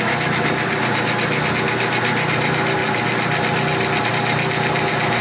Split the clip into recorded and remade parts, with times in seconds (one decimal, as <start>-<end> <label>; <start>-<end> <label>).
0.0-5.2 recorded